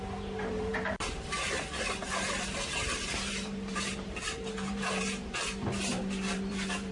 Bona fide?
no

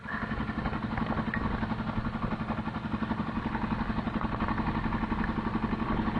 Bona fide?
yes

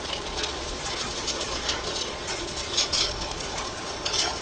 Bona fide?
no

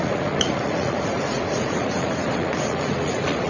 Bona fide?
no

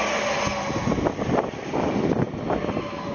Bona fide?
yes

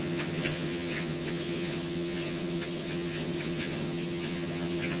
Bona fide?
no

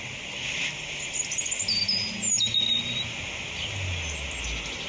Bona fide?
yes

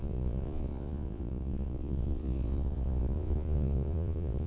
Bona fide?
no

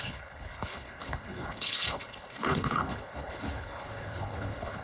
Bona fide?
no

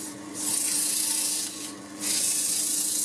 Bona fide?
no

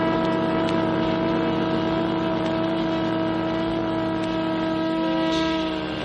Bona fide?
yes